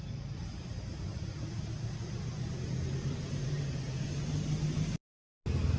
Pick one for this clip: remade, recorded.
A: recorded